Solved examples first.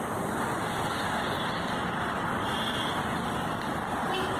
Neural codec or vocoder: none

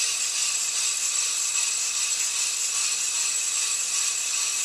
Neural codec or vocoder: none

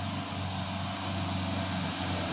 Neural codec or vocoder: none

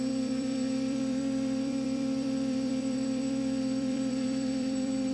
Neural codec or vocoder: vocoder, BigVGAN v2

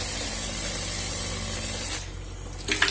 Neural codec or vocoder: none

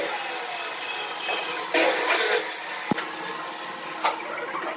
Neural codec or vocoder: none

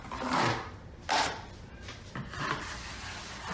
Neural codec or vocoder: vocoder, BigVGAN v2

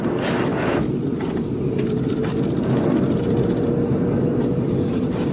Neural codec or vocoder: none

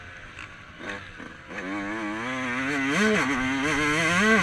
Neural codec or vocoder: none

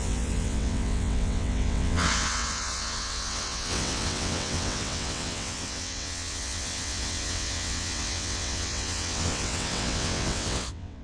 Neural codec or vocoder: vocoder, WaveNeXt